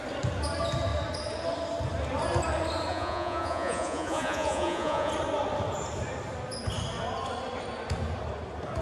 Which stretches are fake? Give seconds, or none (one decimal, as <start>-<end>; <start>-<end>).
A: 2.9-5.1